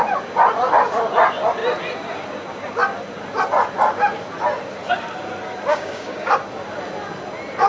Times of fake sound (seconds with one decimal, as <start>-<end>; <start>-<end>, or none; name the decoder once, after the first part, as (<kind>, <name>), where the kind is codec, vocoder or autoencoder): 5.7-6.3 (codec, DAC)